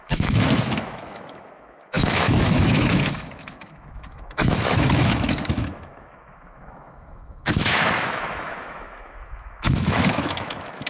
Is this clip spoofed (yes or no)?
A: yes